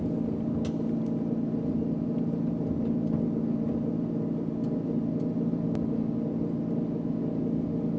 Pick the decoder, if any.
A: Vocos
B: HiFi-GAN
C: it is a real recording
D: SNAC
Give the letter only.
C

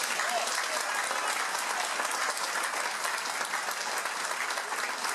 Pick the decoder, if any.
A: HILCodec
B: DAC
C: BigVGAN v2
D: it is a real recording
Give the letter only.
D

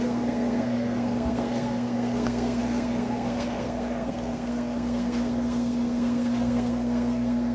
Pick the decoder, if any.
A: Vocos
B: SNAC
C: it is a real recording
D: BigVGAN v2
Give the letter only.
B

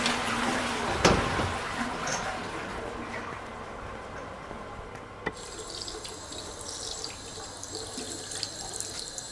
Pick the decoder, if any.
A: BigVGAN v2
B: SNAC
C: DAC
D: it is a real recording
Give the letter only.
D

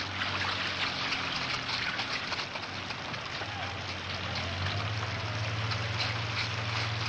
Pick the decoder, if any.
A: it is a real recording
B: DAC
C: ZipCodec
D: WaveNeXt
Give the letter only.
A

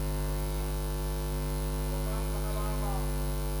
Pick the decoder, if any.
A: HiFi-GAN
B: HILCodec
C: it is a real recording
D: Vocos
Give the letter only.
C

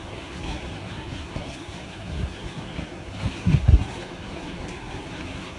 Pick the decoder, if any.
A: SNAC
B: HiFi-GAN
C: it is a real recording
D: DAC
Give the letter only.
A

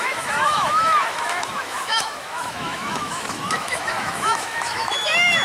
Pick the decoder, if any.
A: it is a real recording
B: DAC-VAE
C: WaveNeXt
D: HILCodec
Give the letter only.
B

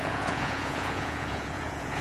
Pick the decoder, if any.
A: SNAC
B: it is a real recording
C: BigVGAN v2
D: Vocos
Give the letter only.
D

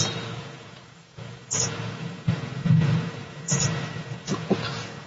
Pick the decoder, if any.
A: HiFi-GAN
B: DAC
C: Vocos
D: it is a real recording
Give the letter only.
C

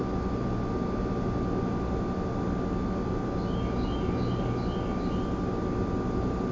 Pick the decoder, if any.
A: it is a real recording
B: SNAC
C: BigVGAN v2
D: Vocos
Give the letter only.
A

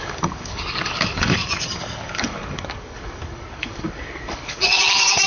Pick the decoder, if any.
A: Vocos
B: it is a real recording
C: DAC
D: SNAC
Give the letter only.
C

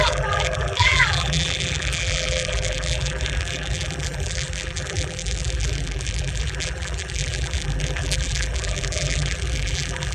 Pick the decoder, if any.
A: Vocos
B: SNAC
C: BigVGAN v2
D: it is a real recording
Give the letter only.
C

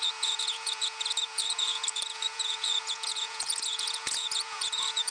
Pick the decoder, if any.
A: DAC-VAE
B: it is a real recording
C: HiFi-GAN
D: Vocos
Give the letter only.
D